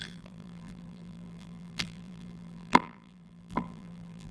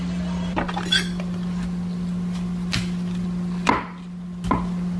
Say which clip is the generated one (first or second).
first